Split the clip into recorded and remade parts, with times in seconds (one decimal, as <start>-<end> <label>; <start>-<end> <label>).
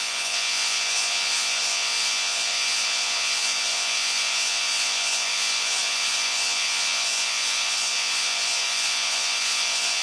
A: 0.0-10.0 remade